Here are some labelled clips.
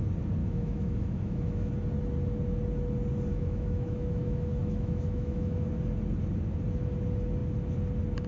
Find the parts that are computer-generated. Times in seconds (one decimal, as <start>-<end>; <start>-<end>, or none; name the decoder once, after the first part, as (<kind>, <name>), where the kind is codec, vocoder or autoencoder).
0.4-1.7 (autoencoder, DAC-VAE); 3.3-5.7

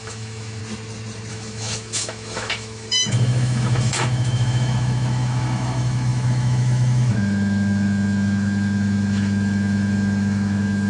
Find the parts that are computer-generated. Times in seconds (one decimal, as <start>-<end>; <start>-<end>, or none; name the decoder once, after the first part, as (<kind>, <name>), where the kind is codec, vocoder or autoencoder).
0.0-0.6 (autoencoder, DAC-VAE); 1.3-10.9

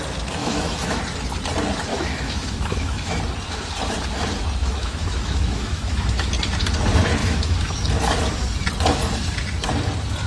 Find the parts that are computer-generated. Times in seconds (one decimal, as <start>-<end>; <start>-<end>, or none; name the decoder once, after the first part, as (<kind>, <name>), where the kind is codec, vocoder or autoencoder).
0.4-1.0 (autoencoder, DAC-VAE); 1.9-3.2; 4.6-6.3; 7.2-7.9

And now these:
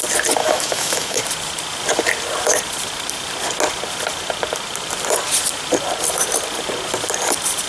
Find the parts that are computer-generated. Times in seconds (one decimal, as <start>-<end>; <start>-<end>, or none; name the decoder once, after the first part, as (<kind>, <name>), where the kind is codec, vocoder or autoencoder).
0.4-1.2 (autoencoder, DAC-VAE)

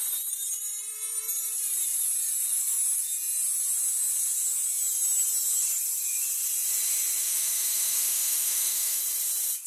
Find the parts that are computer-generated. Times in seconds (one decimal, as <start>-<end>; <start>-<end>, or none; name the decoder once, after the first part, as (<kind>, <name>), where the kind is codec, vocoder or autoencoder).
7.2-9.0 (autoencoder, DAC-VAE)

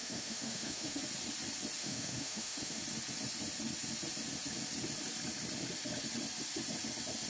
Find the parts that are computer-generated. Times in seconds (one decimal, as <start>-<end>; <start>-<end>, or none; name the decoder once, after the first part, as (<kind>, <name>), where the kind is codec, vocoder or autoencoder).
0.0-1.0 (autoencoder, DAC-VAE); 1.8-2.8

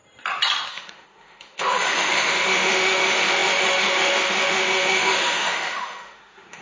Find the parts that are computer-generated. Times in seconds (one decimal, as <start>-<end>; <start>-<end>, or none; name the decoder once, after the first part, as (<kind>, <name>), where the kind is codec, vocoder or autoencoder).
0.7-6.6 (autoencoder, DAC-VAE)

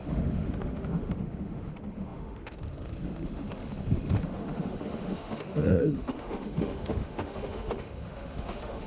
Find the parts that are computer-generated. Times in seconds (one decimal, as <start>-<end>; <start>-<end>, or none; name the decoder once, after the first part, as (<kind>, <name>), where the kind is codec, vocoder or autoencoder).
0.0-8.9 (autoencoder, DAC-VAE)